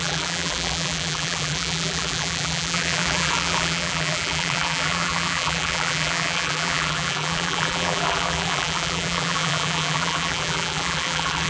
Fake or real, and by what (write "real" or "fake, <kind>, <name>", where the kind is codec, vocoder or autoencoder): fake, vocoder, BigVGAN v2